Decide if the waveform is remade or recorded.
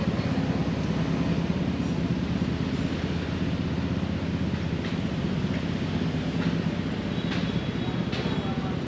recorded